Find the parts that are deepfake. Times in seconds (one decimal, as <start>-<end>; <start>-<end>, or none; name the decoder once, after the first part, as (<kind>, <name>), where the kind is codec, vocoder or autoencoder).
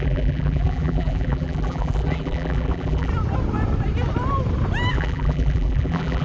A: 0.0-3.1 (vocoder, BigVGAN v2); 4.9-6.2